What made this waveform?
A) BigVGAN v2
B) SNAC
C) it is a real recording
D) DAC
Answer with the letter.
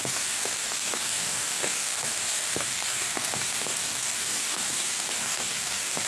D